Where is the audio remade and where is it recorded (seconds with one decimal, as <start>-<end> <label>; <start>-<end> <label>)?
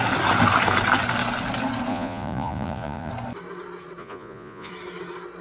0.0-1.9 recorded; 1.9-3.1 remade; 3.1-4.0 recorded; 4.0-4.7 remade; 4.7-5.4 recorded